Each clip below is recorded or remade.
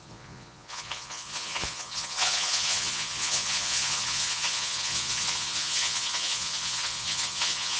remade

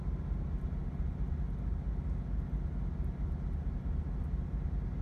recorded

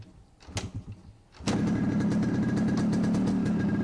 recorded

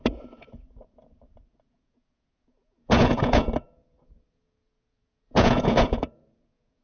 remade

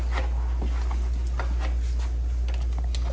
recorded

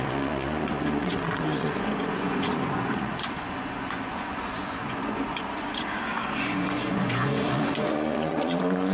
remade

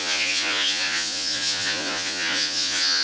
remade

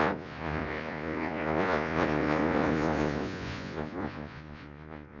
remade